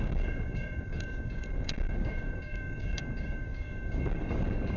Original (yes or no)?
no